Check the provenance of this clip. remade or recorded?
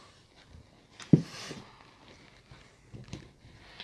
recorded